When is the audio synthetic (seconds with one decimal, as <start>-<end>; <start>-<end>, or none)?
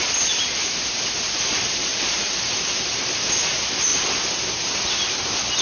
none